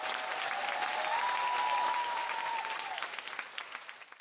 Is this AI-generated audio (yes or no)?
no